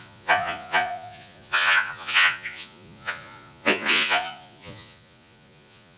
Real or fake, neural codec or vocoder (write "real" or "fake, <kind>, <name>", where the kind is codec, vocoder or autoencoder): fake, vocoder, Vocos